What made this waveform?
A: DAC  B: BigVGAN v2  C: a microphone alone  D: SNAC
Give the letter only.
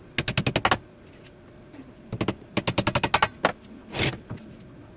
C